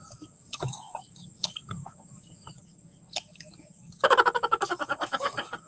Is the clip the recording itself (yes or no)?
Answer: no